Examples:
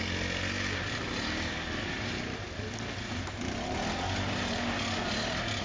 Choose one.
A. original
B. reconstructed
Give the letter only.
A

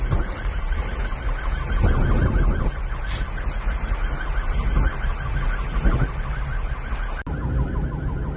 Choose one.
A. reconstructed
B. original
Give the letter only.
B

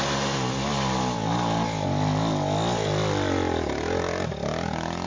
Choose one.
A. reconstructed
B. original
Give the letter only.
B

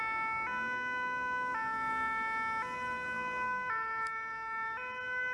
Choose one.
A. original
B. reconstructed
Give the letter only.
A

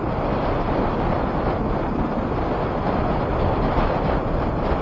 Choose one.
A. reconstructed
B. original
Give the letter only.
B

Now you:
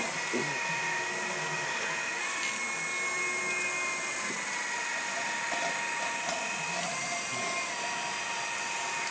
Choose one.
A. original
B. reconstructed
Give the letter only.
A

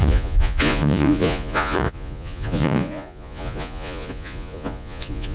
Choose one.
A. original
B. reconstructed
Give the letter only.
B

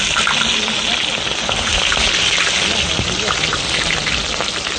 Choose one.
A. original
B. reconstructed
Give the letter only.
A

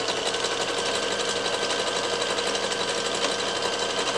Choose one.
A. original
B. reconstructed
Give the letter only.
A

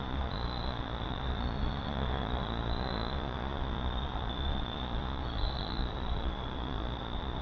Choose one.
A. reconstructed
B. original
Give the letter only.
A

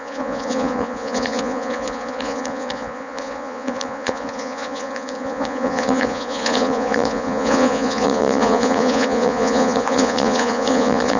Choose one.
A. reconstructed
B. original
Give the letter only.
A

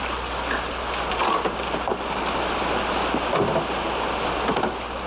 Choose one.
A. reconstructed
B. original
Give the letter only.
B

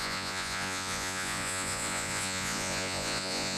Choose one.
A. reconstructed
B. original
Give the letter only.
A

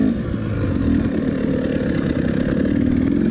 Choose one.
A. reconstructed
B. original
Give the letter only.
B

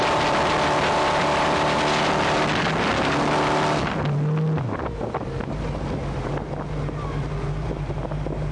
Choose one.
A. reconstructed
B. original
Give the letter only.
B